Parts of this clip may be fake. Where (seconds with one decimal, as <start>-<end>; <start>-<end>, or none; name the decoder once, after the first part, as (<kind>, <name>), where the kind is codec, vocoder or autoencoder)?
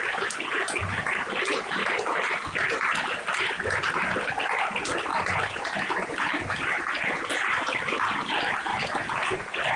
1.8-2.3 (vocoder, BigVGAN v2); 5.1-6.8; 8.7-9.8